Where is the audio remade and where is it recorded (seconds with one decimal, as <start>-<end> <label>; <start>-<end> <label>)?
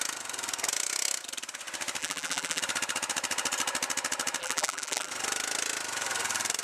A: 0.0-2.0 recorded; 2.0-2.6 remade; 2.6-4.4 recorded; 4.4-5.1 remade; 5.1-6.6 recorded